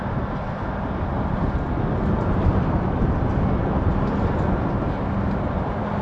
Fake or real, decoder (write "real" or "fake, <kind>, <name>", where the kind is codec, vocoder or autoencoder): real